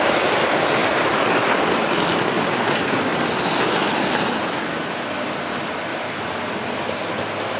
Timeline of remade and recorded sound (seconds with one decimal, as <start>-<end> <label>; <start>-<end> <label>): 0.0-5.9 recorded; 5.9-6.5 remade; 6.5-7.6 recorded